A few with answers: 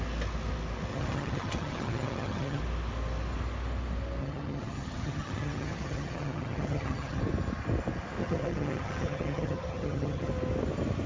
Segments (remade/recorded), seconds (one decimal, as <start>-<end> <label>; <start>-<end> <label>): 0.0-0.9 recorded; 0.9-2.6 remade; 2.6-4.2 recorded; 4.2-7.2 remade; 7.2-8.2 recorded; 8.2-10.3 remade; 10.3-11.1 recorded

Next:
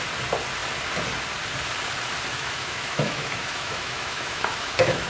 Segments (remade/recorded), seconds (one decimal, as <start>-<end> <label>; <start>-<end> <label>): 0.0-2.3 recorded; 2.3-5.1 remade

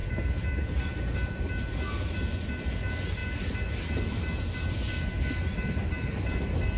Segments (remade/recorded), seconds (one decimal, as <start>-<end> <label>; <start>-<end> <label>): 0.0-6.8 recorded

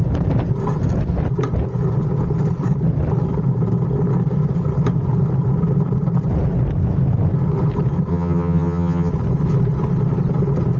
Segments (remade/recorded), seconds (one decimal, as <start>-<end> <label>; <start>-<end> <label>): 0.0-8.1 recorded; 8.1-9.1 remade; 9.1-10.8 recorded

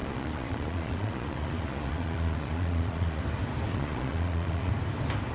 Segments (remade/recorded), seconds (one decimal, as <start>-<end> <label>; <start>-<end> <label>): 0.0-3.2 remade; 3.2-3.7 recorded; 3.7-4.7 remade; 4.7-5.3 recorded

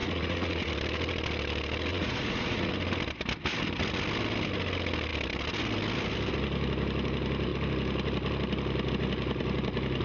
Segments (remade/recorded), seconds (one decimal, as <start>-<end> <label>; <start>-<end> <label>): 0.0-0.7 remade; 0.7-1.9 recorded; 1.9-2.7 remade; 2.7-10.0 recorded